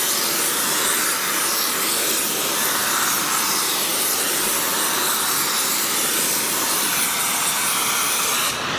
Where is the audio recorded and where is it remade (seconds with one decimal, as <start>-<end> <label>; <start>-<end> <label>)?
0.0-8.8 remade